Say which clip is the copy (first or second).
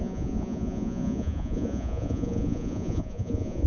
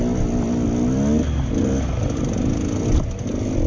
first